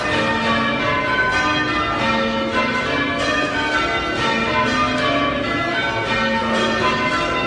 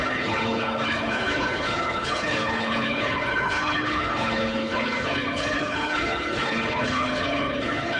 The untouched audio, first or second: first